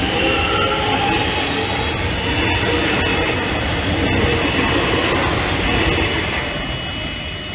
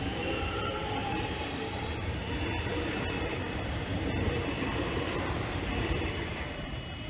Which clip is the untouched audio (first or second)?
first